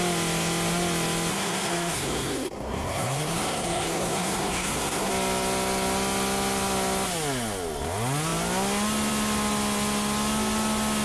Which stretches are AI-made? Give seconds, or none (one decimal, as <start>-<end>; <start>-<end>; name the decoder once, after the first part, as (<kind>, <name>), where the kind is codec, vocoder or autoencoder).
1.3-5.1 (codec, SNAC)